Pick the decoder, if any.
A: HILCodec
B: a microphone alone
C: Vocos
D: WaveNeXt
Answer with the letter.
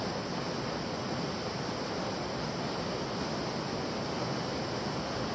B